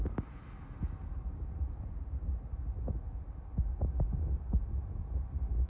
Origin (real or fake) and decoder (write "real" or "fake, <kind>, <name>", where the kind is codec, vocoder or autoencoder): real